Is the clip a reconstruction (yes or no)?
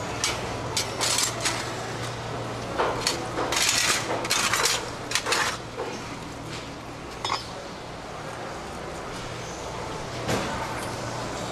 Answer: no